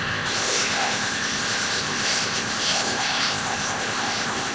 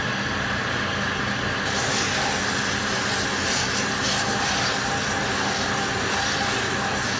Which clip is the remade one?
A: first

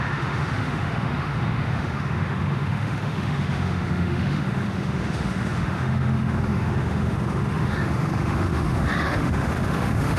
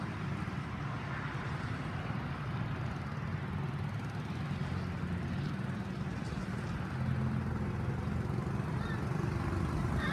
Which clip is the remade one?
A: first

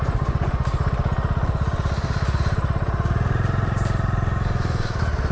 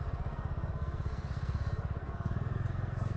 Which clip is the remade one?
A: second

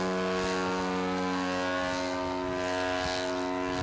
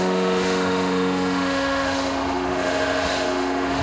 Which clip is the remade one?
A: second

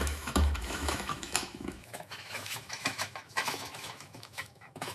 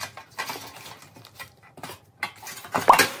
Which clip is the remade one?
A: first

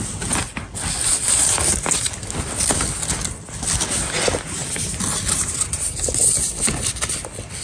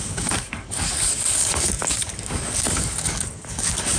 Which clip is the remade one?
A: second